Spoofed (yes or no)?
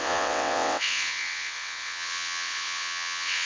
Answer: yes